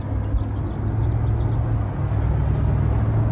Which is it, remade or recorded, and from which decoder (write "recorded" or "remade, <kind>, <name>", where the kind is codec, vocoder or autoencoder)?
recorded